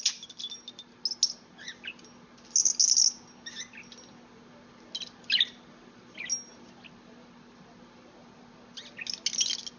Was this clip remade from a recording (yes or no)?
no